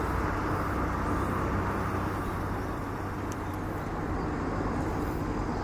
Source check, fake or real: real